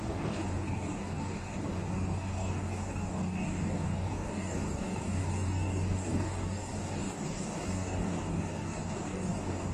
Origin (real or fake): fake